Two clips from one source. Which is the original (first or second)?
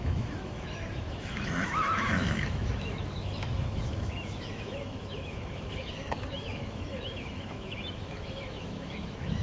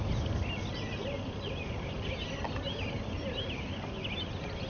second